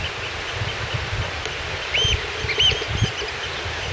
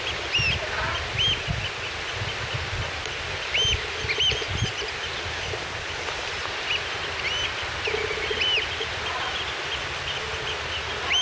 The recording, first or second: second